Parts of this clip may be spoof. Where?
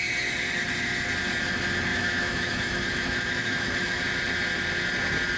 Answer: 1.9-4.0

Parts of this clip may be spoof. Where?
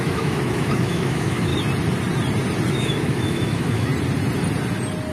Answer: 0.0-1.5; 2.7-3.9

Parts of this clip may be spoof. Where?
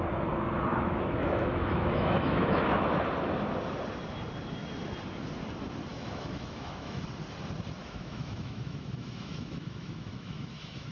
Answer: 0.7-3.0; 5.9-7.0; 7.8-10.9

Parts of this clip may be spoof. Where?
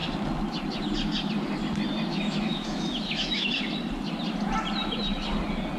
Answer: 2.1-3.5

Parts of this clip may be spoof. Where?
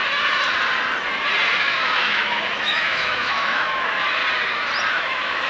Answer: 1.6-4.2; 4.9-5.5